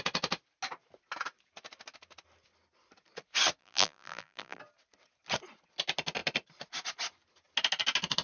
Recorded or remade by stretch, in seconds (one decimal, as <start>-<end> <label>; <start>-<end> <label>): 0.0-3.6 recorded; 3.6-4.6 remade; 4.6-8.2 recorded